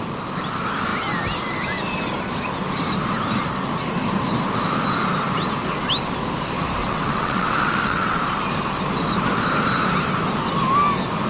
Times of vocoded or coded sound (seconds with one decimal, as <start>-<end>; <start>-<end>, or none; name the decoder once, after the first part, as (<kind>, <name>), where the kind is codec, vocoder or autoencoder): 6.8-8.2 (vocoder, WaveNeXt)